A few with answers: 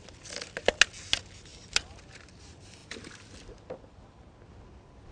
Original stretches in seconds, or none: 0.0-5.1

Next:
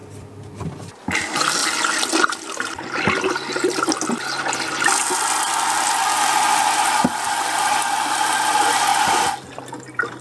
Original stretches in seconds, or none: 0.9-1.6; 2.1-8.9

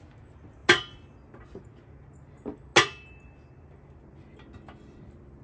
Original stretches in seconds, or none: 0.0-5.4

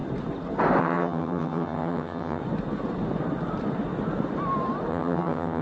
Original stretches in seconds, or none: 0.0-0.8; 2.4-4.9

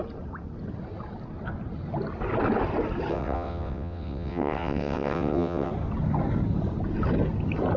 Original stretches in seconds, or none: 0.0-3.1; 5.7-7.8

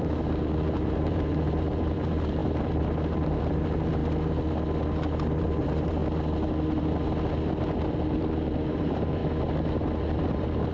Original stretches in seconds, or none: 4.0-5.4; 6.0-7.6; 9.2-10.0

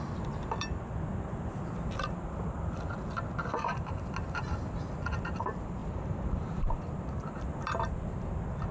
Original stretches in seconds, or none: 0.0-5.8; 6.7-8.7